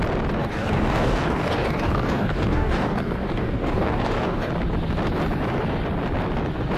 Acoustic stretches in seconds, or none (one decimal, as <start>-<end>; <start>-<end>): 0.0-0.4; 4.5-6.8